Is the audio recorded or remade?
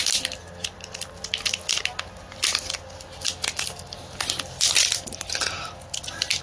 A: recorded